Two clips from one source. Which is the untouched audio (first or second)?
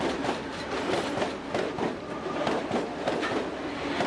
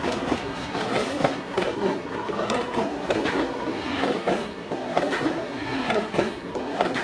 first